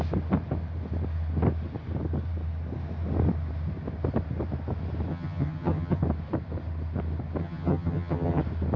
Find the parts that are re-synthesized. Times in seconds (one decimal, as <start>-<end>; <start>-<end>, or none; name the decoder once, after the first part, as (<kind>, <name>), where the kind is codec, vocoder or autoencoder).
5.1-6.0 (vocoder, HiFi-GAN); 7.4-8.4